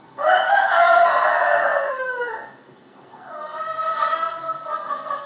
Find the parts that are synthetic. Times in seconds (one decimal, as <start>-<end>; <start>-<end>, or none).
0.0-5.3

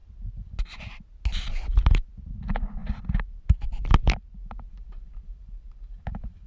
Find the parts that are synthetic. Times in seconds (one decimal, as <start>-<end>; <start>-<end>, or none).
none